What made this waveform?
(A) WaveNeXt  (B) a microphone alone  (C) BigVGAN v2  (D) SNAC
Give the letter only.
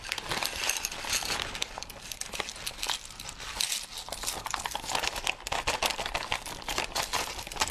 B